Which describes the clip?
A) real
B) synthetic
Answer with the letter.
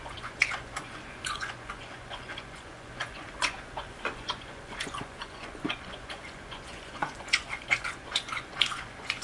B